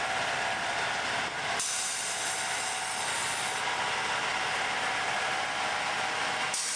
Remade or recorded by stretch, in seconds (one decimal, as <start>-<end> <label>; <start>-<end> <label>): 0.0-6.8 recorded

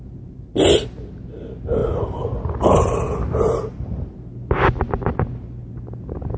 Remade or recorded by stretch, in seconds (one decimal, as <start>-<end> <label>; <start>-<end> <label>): 0.0-6.4 recorded

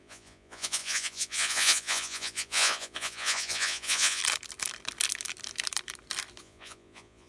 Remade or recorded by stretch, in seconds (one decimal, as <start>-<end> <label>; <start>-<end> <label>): 0.0-4.2 remade; 4.2-6.4 recorded; 6.4-7.3 remade